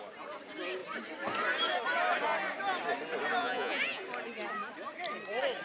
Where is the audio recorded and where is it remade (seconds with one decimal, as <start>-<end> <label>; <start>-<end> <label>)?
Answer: 0.0-3.4 recorded; 3.4-4.0 remade; 4.0-5.6 recorded

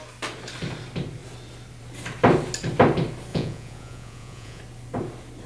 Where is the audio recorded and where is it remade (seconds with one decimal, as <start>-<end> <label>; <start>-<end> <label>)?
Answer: 0.0-3.3 recorded; 3.3-4.6 remade; 4.6-5.5 recorded

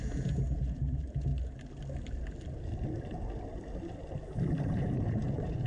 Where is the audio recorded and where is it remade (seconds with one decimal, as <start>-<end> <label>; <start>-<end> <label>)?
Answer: 0.0-1.3 remade; 1.3-4.7 recorded; 4.7-5.7 remade

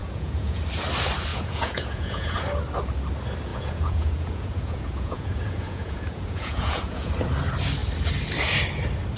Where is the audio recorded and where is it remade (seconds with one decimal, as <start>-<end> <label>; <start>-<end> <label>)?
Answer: 0.0-0.6 remade; 0.6-1.3 recorded; 1.3-2.4 remade; 2.4-3.5 recorded; 3.5-7.1 remade; 7.1-9.2 recorded